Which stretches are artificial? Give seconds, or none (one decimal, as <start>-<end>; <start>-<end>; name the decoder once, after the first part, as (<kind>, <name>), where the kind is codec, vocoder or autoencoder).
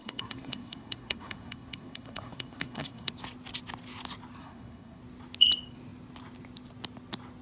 0.0-3.1 (codec, SNAC); 4.4-5.0